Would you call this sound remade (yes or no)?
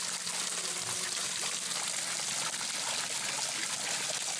no